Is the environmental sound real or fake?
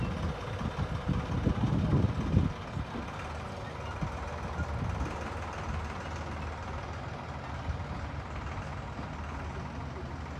real